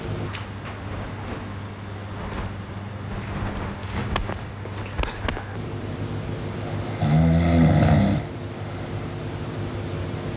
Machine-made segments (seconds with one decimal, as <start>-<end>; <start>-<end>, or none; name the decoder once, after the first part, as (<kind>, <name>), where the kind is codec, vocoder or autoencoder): 3.8-4.5 (codec, DAC)